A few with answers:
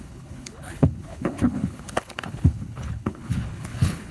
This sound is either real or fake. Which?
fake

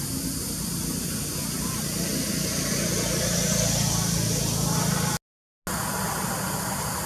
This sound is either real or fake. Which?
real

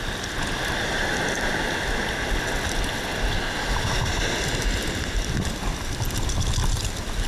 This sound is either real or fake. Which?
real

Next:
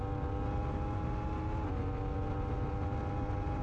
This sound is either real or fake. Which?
real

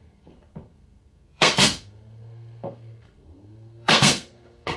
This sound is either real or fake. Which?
fake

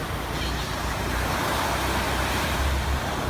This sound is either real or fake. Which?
fake